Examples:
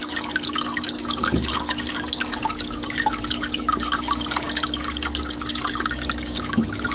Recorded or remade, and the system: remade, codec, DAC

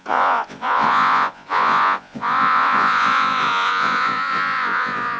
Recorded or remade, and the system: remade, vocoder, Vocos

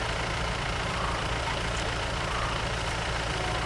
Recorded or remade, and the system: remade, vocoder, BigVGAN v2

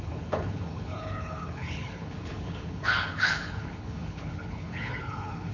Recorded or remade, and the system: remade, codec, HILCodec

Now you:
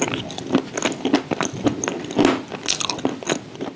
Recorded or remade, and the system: recorded